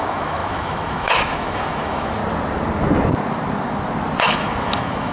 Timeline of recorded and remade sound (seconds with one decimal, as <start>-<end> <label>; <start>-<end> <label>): 0.0-2.2 remade; 2.2-4.2 recorded; 4.2-5.1 remade